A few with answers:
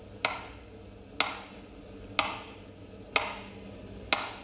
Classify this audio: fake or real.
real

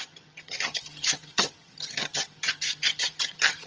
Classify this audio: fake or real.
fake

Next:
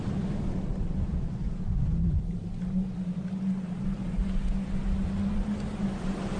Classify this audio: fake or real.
real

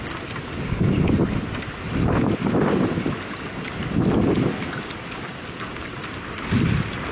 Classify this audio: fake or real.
real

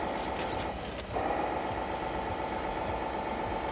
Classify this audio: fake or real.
real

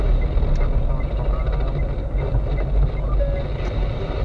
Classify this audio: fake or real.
real